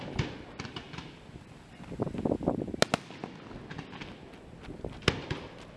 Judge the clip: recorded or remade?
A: recorded